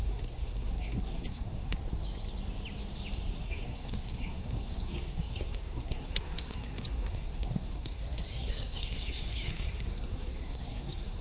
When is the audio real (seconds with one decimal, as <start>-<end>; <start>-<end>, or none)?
1.8-3.3